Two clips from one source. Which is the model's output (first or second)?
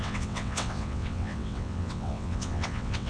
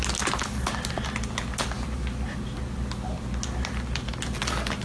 first